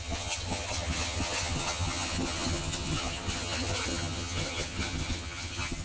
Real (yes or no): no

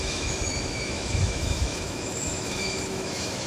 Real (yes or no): no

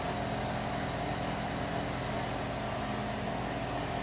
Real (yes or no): yes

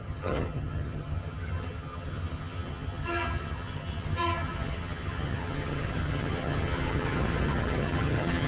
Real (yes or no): no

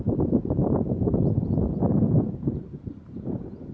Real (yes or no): no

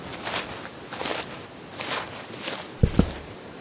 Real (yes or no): yes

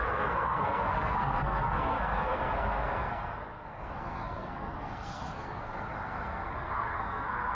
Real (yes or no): no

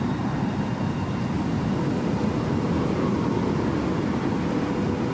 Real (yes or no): yes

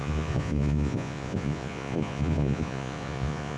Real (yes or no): no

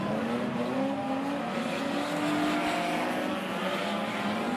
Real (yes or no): yes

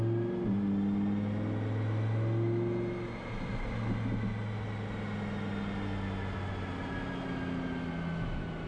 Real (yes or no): yes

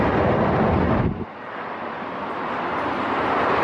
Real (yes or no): yes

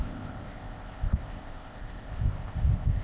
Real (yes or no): no